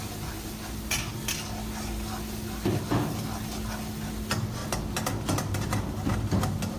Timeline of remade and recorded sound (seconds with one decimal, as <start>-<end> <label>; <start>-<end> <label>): 0.0-6.8 recorded